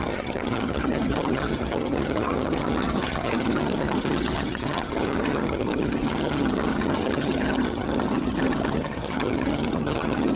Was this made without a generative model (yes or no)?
no